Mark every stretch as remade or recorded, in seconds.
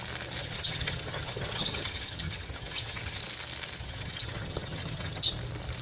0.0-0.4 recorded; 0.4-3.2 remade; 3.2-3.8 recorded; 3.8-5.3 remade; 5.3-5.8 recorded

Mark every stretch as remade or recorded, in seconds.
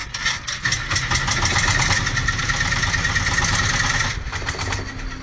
0.0-5.2 recorded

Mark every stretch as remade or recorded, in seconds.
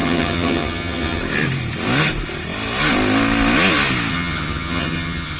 0.0-1.2 remade; 1.2-4.1 recorded; 4.1-5.4 remade